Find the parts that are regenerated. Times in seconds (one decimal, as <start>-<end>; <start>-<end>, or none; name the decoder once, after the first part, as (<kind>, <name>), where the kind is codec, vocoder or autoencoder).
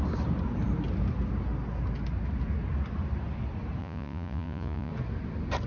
3.8-4.9 (vocoder, Vocos)